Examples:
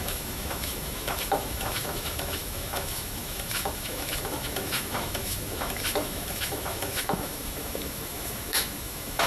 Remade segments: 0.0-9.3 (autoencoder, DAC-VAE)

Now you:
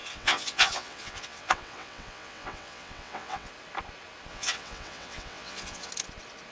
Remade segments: 0.0-3.5 (vocoder, WaveNeXt); 4.3-5.9

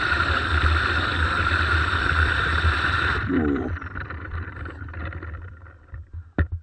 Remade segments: 0.0-6.6 (vocoder, BigVGAN v2)